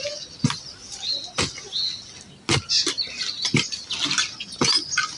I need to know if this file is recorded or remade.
recorded